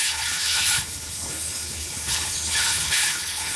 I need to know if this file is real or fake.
fake